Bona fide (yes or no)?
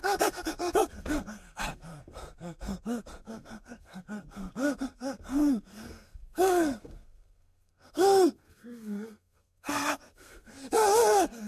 no